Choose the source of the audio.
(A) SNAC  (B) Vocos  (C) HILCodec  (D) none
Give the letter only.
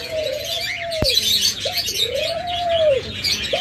B